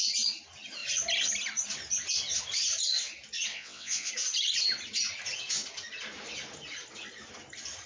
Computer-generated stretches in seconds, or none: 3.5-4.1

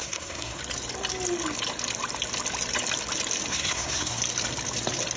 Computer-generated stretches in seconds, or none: 0.0-0.6; 3.5-4.2

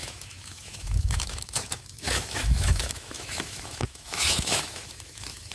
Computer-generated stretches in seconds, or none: 0.0-5.5